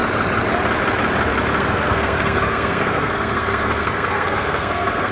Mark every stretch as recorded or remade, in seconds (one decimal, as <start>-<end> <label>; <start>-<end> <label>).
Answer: 0.0-1.6 recorded; 1.6-5.1 remade